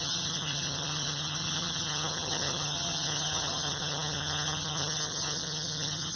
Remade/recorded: remade